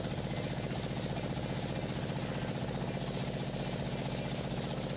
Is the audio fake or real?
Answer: real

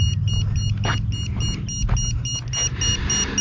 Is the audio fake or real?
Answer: real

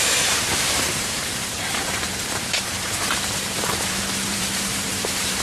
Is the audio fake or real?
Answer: fake